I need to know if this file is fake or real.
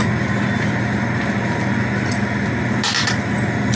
real